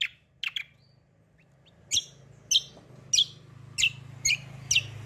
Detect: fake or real real